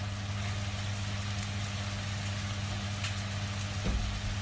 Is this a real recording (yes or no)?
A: yes